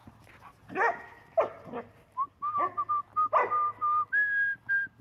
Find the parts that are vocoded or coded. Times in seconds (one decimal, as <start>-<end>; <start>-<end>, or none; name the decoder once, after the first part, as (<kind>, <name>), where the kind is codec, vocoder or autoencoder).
none